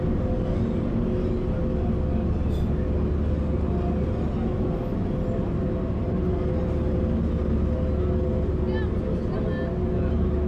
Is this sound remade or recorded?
recorded